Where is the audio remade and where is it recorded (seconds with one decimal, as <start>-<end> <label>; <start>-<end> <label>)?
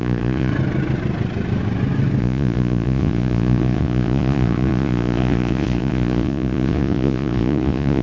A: 0.0-0.5 remade; 0.5-2.2 recorded; 2.2-8.0 remade